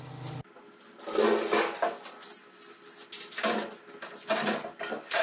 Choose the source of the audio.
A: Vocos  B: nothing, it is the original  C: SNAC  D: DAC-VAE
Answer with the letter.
B